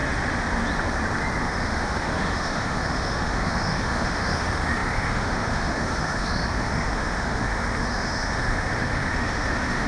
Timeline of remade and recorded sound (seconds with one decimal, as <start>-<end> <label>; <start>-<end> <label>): 0.0-1.4 recorded; 1.4-9.9 remade